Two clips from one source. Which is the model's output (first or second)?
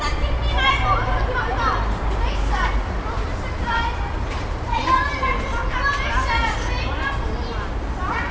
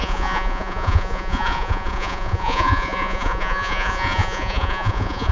second